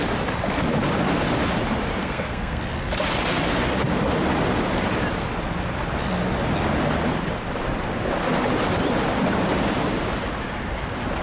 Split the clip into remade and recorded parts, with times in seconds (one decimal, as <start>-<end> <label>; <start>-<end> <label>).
0.0-2.0 recorded; 2.0-2.6 remade; 2.6-11.2 recorded